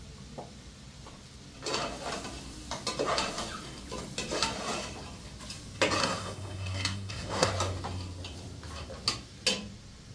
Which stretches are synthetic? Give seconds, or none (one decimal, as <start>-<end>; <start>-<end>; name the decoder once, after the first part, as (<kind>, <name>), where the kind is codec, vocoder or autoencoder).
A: 6.0-7.5 (codec, SNAC)